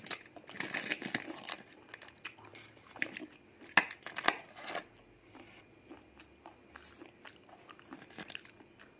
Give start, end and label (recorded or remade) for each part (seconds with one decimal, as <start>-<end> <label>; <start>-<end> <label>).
0.0-9.0 recorded